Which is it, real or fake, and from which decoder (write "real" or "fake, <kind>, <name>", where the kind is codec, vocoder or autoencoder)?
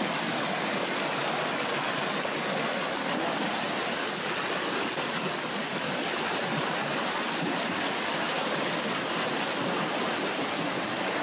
real